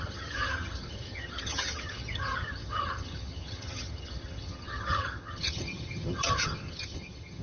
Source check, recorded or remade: remade